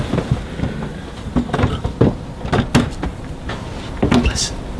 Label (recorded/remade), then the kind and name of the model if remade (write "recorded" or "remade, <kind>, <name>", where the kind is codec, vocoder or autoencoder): recorded